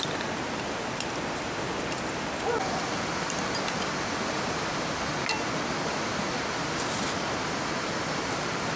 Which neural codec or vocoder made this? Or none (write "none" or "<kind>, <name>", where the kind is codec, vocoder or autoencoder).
none